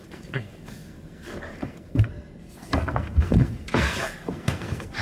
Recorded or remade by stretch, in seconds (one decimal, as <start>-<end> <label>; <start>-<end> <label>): 0.0-5.0 remade